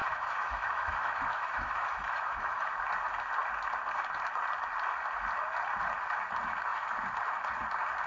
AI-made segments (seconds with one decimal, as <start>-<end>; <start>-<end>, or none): 0.0-2.7